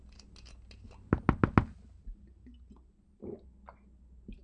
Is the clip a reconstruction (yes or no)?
no